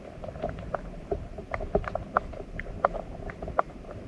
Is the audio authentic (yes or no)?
no